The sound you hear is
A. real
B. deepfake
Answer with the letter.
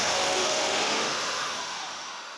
B